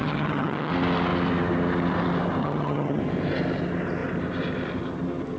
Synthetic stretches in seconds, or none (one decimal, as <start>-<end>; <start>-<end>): 0.0-0.7; 2.4-3.0